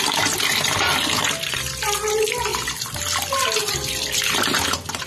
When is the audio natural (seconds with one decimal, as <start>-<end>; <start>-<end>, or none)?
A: 0.0-2.5; 3.0-3.6; 4.6-5.1